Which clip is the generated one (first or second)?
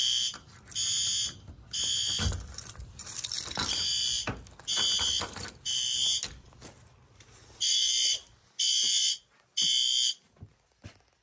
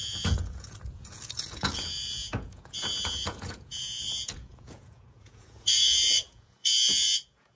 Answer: second